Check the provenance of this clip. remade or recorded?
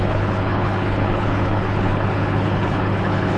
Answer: remade